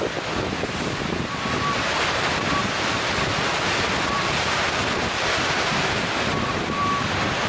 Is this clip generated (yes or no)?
no